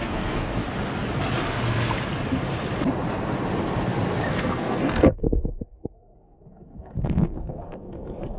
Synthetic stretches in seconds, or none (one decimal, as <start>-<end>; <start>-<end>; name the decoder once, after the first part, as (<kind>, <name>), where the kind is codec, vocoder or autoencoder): 0.0-0.6 (codec, SNAC); 4.3-8.4

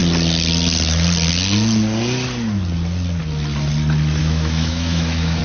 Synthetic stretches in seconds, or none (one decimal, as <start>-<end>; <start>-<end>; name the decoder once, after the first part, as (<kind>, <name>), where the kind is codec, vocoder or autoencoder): 4.2-5.4 (autoencoder, DAC-VAE)

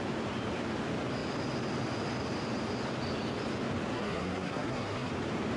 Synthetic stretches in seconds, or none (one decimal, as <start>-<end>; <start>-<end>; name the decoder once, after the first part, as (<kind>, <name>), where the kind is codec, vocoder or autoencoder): 3.9-5.1 (codec, SNAC)

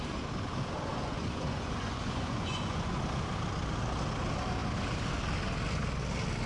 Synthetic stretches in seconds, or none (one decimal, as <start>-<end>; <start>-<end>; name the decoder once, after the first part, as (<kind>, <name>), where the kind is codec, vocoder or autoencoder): 0.9-3.0 (vocoder, Vocos)

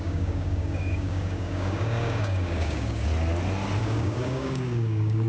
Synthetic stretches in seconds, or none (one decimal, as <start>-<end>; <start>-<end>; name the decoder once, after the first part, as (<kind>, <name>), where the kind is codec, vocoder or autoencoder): 0.0-3.1 (codec, DAC); 3.8-5.3

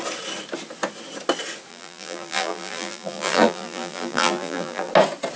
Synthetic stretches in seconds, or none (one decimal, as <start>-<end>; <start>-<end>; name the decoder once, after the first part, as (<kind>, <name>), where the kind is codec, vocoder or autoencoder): 1.7-4.9 (vocoder, BigVGAN v2)

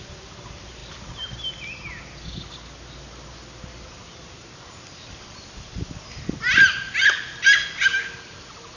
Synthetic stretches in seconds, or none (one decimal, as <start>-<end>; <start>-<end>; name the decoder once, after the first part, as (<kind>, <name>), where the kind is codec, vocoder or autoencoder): none